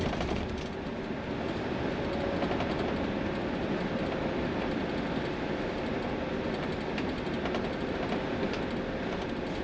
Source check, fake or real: real